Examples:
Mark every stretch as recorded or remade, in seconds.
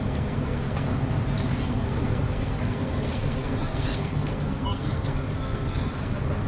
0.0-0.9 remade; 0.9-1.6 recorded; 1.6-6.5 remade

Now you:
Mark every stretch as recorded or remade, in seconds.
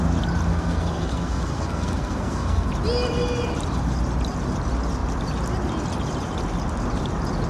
0.0-0.5 recorded; 0.5-2.7 remade; 2.7-7.5 recorded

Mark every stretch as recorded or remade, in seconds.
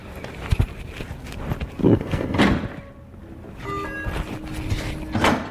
0.0-1.8 recorded; 1.8-2.4 remade; 2.4-5.5 recorded